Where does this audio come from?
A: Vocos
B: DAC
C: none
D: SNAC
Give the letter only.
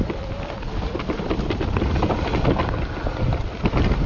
C